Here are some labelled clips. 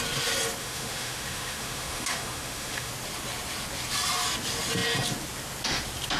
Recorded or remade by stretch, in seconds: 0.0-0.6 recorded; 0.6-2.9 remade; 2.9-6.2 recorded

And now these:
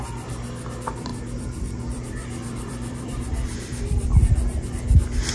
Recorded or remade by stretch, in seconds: 0.0-1.1 recorded; 1.1-4.2 remade; 4.2-5.3 recorded

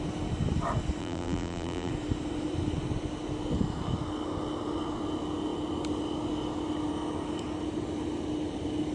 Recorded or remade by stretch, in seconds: 0.0-1.0 recorded; 1.0-1.9 remade; 1.9-8.9 recorded